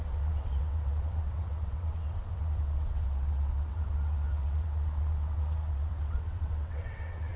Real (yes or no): no